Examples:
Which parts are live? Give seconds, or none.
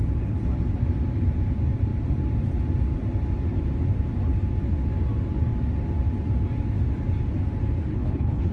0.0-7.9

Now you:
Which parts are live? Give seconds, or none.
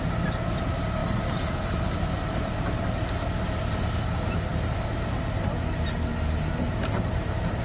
0.0-1.0; 2.8-4.5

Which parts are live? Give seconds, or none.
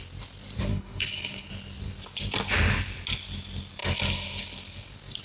0.0-0.7; 1.5-5.2